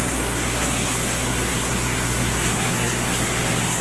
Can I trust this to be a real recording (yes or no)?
no